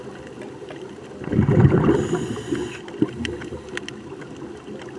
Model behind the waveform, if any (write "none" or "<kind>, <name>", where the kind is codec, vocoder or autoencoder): none